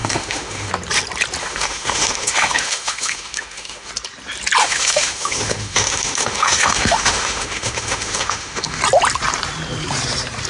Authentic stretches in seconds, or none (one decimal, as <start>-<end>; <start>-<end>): 0.7-1.4; 3.9-4.6; 8.8-10.5